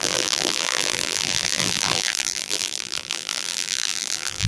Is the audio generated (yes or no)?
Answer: yes